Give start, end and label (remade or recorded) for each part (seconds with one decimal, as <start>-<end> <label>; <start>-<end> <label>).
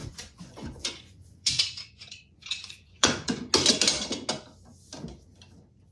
0.0-3.5 remade; 3.5-5.9 recorded